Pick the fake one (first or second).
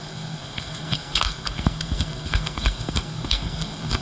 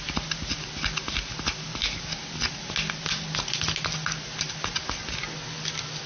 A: first